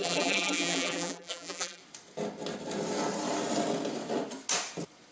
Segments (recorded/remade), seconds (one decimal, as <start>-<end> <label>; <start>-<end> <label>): 0.0-1.8 remade; 1.8-5.1 recorded